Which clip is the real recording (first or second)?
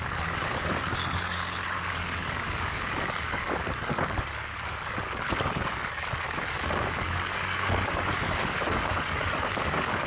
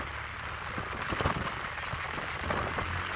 second